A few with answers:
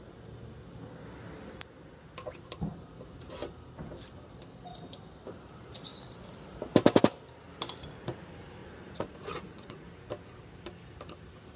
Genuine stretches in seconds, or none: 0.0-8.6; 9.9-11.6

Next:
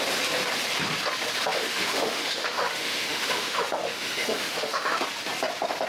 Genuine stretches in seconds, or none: 0.0-1.5; 5.0-5.9

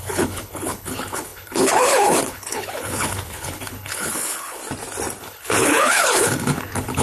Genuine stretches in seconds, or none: 4.6-5.2